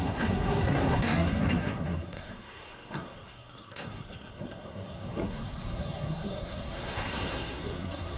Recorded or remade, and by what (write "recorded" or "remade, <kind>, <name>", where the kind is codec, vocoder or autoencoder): remade, codec, SNAC